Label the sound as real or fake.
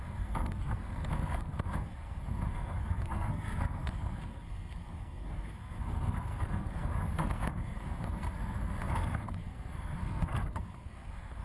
fake